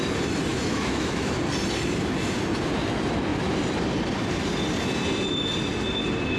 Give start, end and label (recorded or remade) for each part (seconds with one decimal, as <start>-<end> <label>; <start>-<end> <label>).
0.0-0.5 recorded; 0.5-1.4 remade; 1.4-6.4 recorded